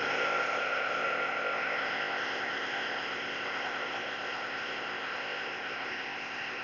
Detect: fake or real fake